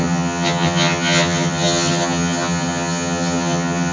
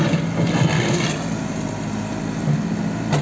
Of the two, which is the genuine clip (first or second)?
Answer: second